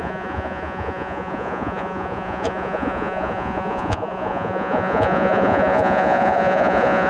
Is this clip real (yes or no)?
no